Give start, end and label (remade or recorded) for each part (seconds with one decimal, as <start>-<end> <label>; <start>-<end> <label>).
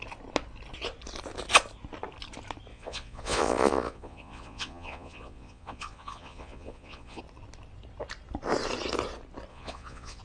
0.0-2.7 recorded; 2.7-7.2 remade; 7.2-9.5 recorded; 9.5-10.2 remade